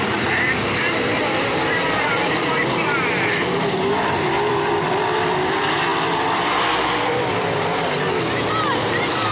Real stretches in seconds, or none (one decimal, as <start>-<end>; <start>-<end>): none